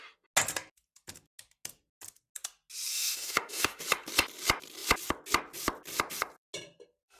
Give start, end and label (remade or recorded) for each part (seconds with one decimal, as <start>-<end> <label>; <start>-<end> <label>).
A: 0.0-2.9 recorded; 2.9-3.8 remade; 3.8-7.2 recorded